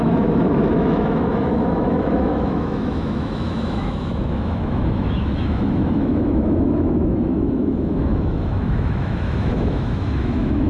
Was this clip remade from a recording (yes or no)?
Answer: yes